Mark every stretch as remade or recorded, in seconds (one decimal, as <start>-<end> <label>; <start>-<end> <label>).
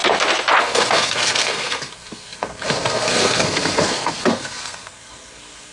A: 0.0-0.6 recorded; 0.6-5.7 remade